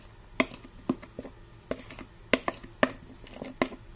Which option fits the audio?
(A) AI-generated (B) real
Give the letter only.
B